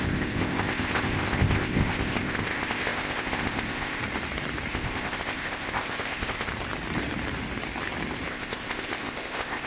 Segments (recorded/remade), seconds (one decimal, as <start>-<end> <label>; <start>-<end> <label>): 0.0-4.0 remade; 4.0-4.7 recorded; 4.7-6.5 remade; 6.5-8.3 recorded; 8.3-9.7 remade